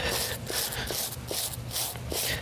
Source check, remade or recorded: recorded